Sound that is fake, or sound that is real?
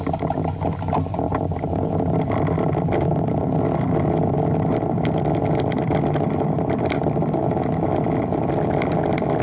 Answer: real